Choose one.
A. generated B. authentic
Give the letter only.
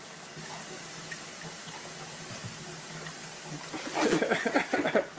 B